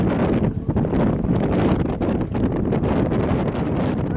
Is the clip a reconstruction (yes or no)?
no